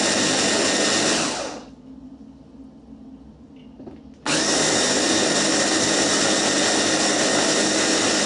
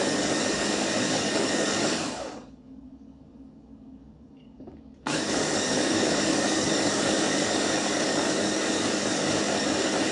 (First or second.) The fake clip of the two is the second